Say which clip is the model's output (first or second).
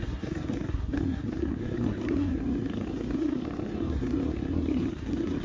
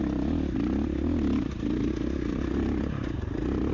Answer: first